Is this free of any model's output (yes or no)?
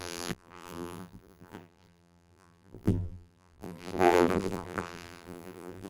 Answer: no